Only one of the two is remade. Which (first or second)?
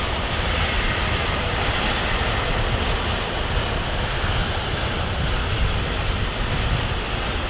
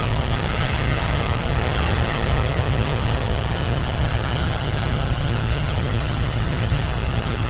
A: second